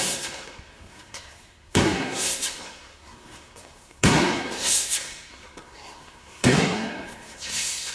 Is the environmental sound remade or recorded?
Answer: remade